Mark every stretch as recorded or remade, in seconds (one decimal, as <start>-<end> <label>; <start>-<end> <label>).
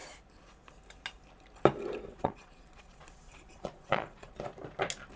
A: 0.0-2.1 recorded; 2.1-4.3 remade; 4.3-5.2 recorded